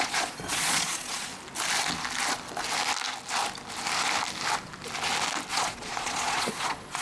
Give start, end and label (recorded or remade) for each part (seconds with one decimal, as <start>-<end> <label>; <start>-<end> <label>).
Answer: 0.0-1.3 remade; 1.3-5.5 recorded; 5.5-7.0 remade